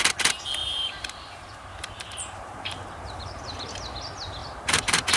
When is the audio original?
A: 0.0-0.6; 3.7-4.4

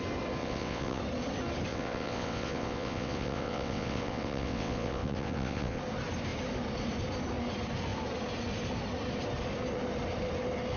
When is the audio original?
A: 0.0-0.4; 1.0-1.7; 5.8-10.8

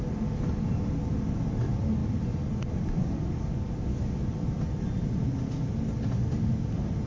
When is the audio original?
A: 0.0-3.0; 4.0-7.1

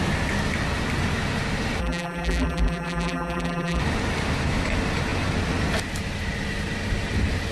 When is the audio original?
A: 0.0-1.8; 3.8-7.5

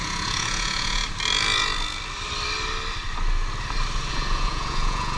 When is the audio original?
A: 1.0-4.1